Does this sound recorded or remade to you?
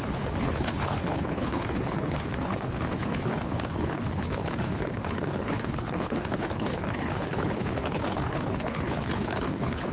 remade